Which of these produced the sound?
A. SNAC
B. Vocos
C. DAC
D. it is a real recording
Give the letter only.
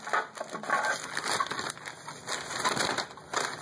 D